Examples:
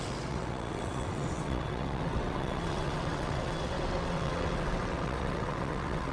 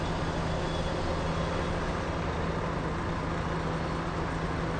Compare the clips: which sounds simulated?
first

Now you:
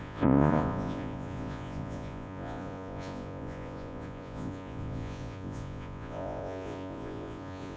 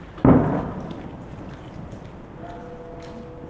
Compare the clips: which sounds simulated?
first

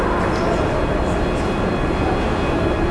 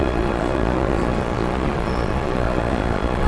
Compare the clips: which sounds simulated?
second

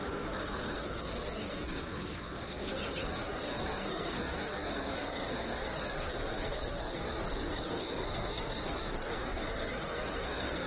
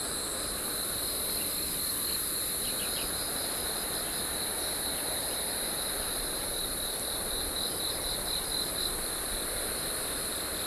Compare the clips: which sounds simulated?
first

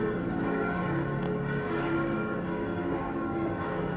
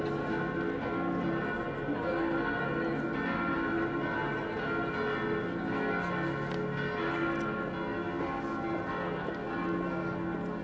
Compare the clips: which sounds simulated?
first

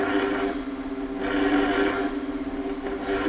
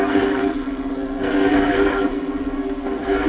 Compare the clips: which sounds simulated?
second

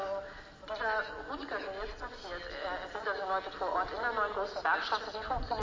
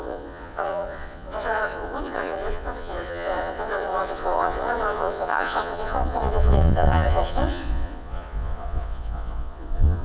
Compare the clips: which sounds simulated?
second